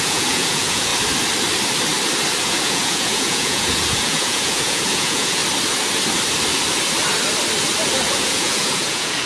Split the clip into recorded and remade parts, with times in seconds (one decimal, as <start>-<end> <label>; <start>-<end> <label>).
0.0-0.9 remade; 0.9-2.4 recorded; 2.4-5.4 remade; 5.4-8.1 recorded; 8.1-9.3 remade